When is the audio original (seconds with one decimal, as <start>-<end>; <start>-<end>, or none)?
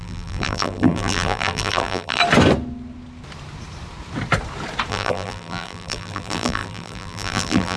2.2-4.9